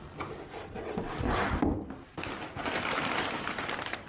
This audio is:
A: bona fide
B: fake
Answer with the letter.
B